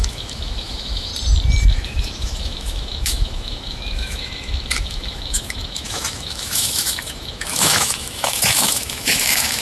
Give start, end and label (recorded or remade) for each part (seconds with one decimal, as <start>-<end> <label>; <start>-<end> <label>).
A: 0.0-1.1 remade; 1.1-1.7 recorded; 1.7-9.6 remade